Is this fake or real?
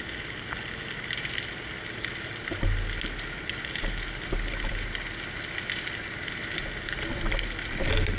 real